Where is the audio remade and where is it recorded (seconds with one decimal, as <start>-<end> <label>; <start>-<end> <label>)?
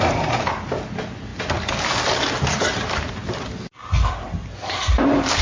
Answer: 0.0-5.4 recorded